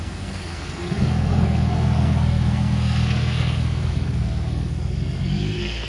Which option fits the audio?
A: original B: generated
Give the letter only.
B